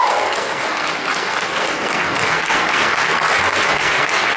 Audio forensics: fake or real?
fake